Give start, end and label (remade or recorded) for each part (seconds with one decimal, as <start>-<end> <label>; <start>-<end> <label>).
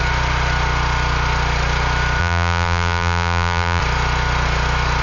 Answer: 0.0-2.2 recorded; 2.2-3.8 remade; 3.8-5.0 recorded